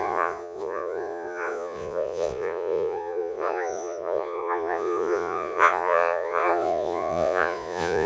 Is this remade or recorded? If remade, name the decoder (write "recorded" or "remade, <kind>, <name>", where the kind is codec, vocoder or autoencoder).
remade, vocoder, Vocos